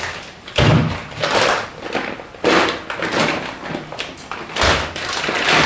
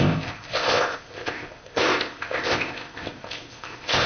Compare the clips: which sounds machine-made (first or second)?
second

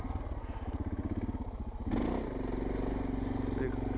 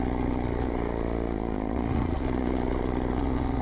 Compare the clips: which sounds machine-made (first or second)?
second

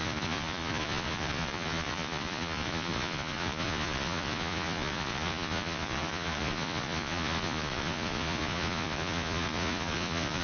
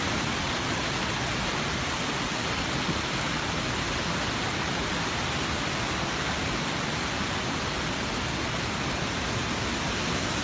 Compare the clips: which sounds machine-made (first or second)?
first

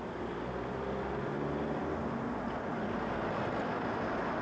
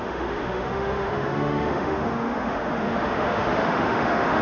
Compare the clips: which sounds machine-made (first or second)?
second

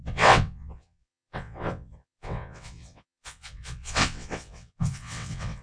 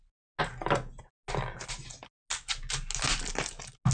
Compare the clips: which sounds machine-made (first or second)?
first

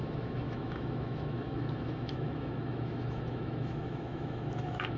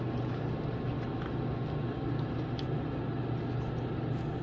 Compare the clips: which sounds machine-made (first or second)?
first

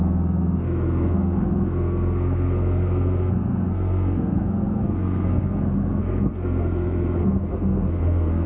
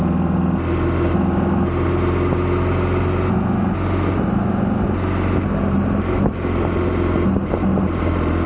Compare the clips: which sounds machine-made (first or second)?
first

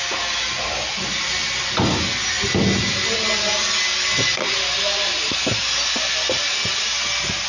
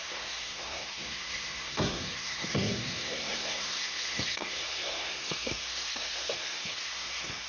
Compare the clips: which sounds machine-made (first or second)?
second